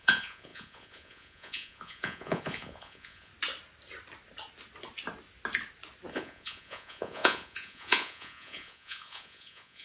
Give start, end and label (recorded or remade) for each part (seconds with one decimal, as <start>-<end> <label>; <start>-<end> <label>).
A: 0.0-3.3 remade; 3.3-6.1 recorded; 6.1-9.8 remade